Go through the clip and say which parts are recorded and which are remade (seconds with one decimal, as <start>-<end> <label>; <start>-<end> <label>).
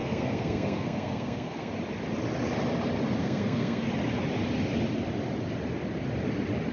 0.0-1.7 remade; 1.7-3.2 recorded; 3.2-3.9 remade; 3.9-6.7 recorded